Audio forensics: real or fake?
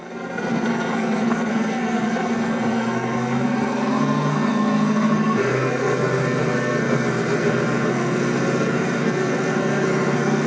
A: fake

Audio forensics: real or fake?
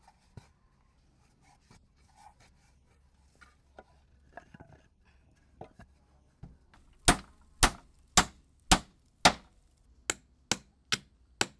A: real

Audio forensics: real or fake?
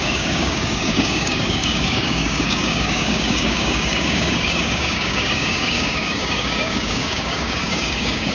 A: fake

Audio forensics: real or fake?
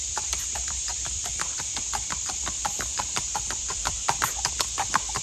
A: fake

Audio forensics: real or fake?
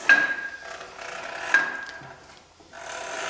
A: real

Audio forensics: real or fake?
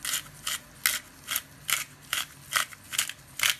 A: real